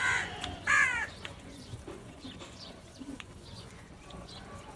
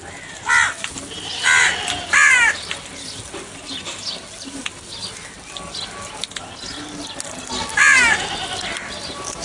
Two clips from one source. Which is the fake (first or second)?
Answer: first